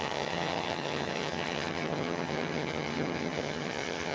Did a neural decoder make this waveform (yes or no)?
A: yes